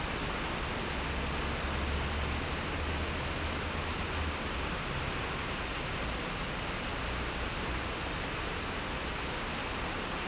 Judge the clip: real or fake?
real